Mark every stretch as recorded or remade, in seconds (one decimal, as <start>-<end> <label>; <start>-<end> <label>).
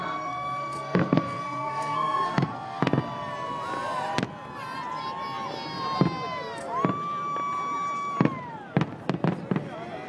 0.0-2.8 remade; 2.8-10.1 recorded